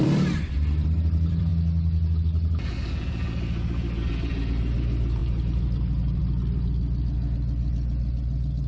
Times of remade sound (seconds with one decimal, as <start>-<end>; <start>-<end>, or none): 0.0-1.5; 4.1-8.7